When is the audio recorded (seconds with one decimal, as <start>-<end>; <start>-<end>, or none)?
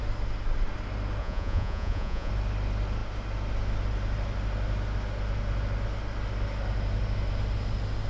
0.0-1.2; 2.3-8.1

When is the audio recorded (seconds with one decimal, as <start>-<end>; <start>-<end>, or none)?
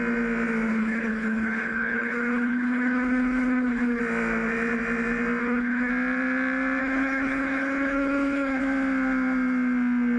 0.0-0.7; 4.0-5.4; 5.9-6.8; 8.6-10.2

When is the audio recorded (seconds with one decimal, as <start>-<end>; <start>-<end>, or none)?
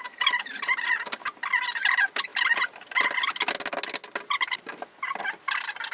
0.0-5.9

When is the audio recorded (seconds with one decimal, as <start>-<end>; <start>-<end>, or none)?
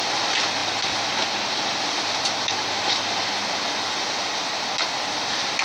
0.0-5.6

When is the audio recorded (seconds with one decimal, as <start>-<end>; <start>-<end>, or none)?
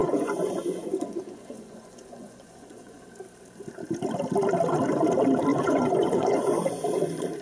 3.1-5.5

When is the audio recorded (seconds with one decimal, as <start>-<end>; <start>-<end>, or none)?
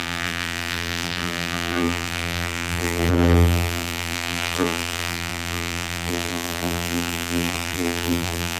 none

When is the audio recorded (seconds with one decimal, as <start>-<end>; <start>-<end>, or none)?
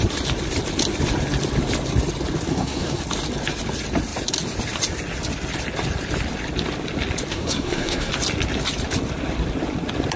0.0-2.5; 3.0-7.3; 8.1-10.2